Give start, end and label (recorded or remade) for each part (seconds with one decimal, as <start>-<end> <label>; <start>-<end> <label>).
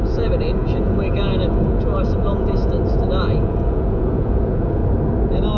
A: 0.0-4.8 remade; 4.8-5.6 recorded